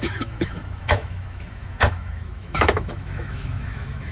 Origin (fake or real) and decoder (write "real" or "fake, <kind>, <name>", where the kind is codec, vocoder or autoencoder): fake, autoencoder, DAC-VAE